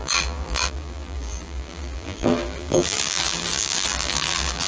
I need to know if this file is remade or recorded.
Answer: remade